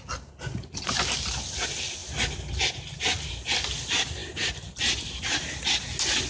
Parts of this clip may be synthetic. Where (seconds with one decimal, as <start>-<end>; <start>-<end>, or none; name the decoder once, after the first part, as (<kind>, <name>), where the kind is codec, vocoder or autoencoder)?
none